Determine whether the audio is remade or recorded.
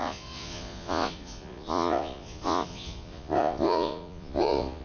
remade